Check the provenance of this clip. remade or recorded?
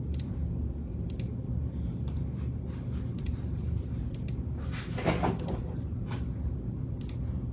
recorded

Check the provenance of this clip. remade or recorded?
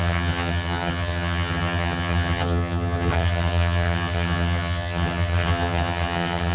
remade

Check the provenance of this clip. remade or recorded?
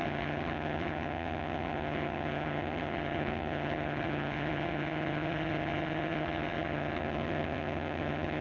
remade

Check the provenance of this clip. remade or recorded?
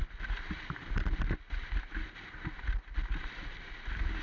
recorded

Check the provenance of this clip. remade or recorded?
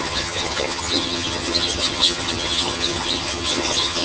remade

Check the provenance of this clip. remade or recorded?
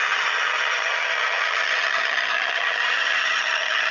remade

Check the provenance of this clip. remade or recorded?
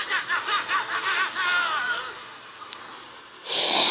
recorded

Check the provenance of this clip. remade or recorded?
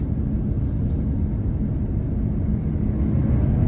recorded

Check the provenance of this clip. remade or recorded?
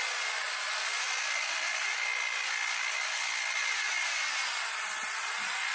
recorded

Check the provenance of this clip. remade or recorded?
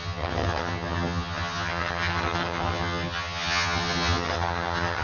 remade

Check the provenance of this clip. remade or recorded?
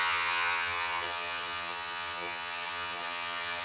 remade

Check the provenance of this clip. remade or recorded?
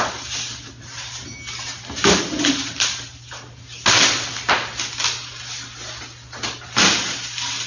recorded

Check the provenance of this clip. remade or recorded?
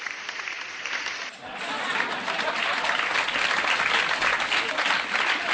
recorded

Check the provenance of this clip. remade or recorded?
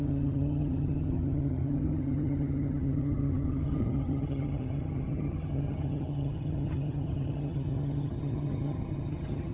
remade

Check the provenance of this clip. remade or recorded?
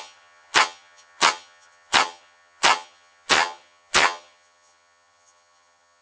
remade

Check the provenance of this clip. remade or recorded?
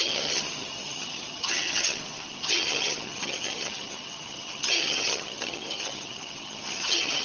remade